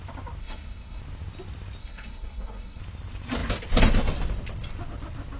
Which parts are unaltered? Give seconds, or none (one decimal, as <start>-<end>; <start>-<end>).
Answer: 0.0-0.4; 1.0-1.8; 2.8-5.4